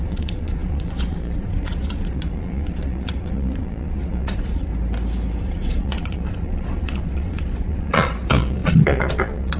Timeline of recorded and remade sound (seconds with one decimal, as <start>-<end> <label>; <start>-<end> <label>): 0.0-4.7 remade; 4.7-5.4 recorded; 5.4-9.6 remade